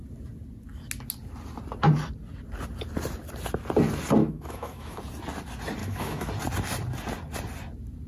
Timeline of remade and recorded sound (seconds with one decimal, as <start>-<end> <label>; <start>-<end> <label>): 0.0-4.2 recorded; 4.2-5.0 remade; 5.0-5.8 recorded; 5.8-6.3 remade; 6.3-8.1 recorded